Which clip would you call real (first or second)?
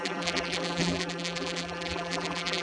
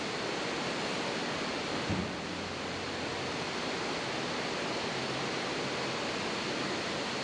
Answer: second